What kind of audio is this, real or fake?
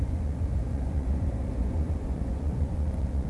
fake